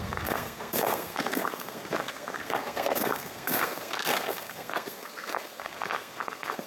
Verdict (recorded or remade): remade